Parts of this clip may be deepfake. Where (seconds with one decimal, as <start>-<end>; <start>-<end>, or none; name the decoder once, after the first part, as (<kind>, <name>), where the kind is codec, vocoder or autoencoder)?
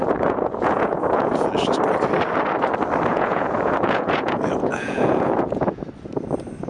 0.0-1.5 (vocoder, Vocos); 3.1-5.8